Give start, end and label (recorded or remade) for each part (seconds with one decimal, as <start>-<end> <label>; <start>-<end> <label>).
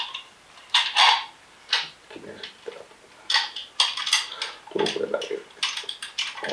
0.0-6.5 recorded